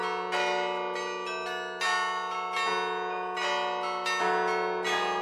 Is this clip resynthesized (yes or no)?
no